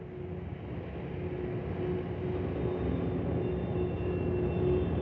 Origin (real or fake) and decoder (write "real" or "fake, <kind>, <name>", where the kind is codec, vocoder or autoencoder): real